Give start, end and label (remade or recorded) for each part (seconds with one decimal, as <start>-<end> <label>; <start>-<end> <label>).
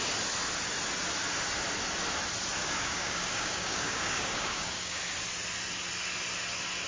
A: 0.0-2.6 recorded; 2.6-5.0 remade; 5.0-6.9 recorded